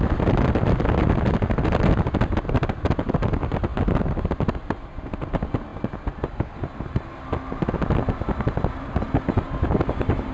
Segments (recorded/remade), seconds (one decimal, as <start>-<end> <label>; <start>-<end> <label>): 0.0-10.3 recorded